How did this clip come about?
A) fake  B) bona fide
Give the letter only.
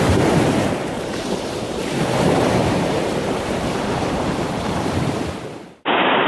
A